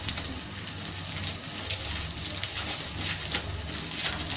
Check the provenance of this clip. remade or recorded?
recorded